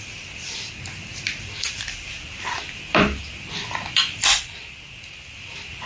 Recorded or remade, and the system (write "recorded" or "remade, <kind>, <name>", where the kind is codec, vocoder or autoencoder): remade, vocoder, BigVGAN v2